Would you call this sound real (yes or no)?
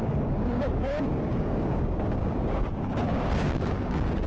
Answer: no